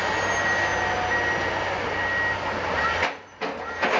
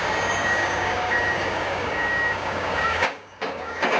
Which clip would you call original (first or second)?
first